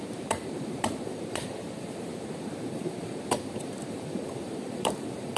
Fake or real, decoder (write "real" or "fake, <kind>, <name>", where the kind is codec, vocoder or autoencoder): fake, vocoder, BigVGAN v2